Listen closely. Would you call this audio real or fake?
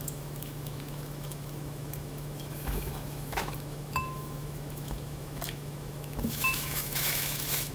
fake